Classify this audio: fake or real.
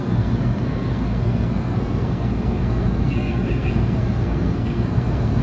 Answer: fake